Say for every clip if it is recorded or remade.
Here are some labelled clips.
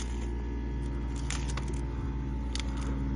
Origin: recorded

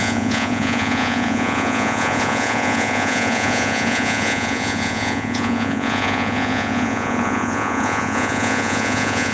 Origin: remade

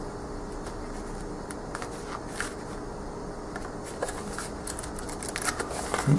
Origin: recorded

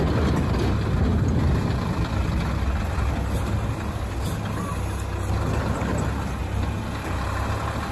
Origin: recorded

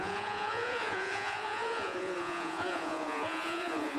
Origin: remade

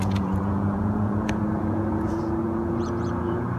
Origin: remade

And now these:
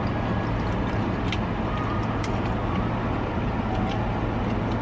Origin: recorded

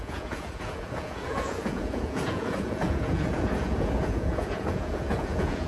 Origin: remade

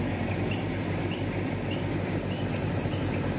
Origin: recorded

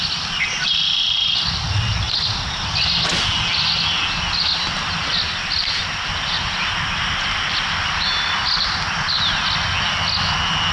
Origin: recorded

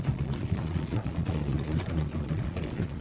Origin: remade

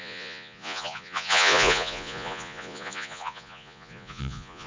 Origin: remade